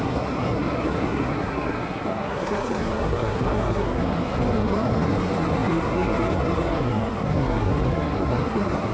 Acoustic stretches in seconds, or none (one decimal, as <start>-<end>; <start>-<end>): none